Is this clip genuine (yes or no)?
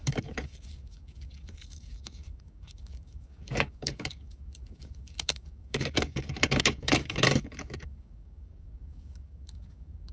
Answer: no